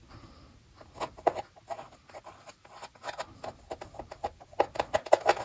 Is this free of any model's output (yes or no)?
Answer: yes